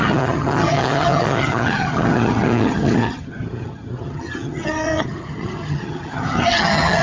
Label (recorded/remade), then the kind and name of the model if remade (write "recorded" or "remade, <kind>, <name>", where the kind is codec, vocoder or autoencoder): remade, vocoder, HiFi-GAN